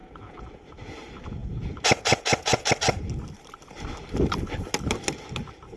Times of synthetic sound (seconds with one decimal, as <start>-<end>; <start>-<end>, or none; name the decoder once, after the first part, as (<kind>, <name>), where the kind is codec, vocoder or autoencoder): 0.0-0.6 (vocoder, Vocos); 1.4-2.7